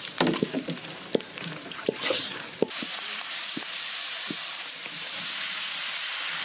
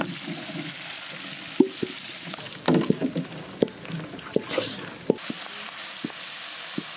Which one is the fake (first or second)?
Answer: first